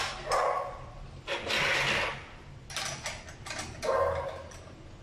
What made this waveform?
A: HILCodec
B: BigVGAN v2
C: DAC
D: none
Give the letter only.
D